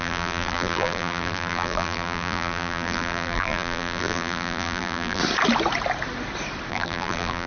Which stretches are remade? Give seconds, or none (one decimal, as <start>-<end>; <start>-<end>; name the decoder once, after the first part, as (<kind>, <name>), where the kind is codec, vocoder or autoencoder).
0.0-5.2 (vocoder, BigVGAN v2); 6.7-7.5